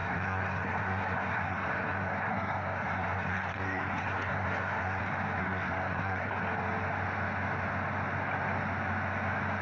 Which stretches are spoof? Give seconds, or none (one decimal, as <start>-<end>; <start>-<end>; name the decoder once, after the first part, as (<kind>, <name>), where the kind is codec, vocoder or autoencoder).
0.0-5.0 (codec, SNAC); 5.4-6.3